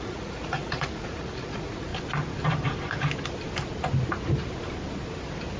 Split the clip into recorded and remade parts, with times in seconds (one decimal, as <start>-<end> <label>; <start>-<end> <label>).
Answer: 0.0-1.9 remade; 1.9-5.6 recorded